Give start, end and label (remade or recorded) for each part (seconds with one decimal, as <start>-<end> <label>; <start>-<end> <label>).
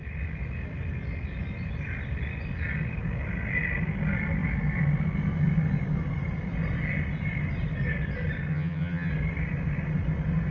0.0-8.5 recorded; 8.5-9.1 remade; 9.1-10.5 recorded